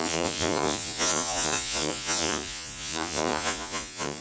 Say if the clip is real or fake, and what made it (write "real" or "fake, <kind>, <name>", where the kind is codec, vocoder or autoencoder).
fake, vocoder, Vocos